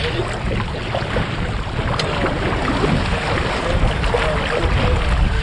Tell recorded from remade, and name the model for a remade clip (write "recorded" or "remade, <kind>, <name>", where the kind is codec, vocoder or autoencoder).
recorded